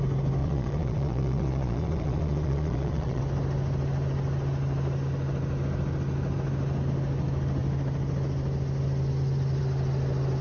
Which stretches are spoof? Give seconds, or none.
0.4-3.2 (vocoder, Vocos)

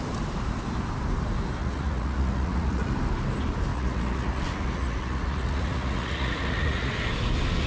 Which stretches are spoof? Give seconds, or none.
1.6-2.9 (vocoder, Vocos); 3.7-6.9

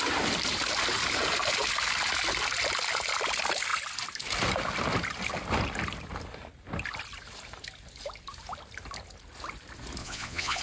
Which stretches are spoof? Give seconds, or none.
10.0-10.6 (vocoder, Vocos)

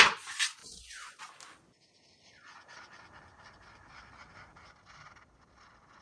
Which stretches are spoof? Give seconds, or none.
0.6-1.2 (vocoder, Vocos)

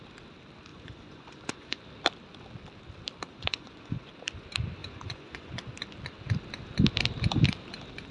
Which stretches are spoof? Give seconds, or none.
0.7-1.8 (vocoder, Vocos); 3.3-4.1; 4.8-5.5

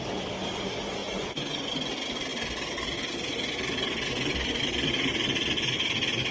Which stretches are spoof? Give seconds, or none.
1.0-1.9 (vocoder, Vocos)

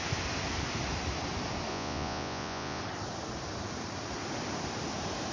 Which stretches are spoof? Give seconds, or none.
1.7-2.8 (vocoder, Vocos)

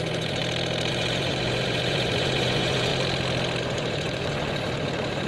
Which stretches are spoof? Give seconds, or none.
0.0-0.4 (vocoder, Vocos); 0.9-2.9; 3.6-5.3